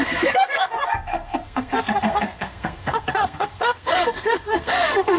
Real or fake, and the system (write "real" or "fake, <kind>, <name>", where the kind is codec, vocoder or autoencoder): fake, codec, SNAC